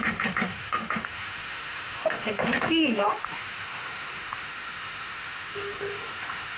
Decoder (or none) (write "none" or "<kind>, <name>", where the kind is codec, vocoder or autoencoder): autoencoder, DAC-VAE